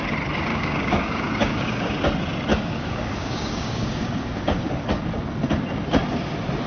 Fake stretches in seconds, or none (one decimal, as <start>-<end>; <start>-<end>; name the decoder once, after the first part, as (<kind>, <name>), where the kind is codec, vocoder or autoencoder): 0.5-2.0 (codec, DAC); 2.5-4.7